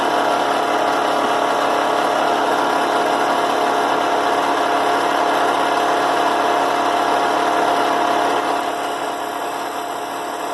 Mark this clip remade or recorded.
recorded